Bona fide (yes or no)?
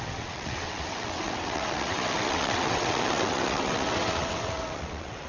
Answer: no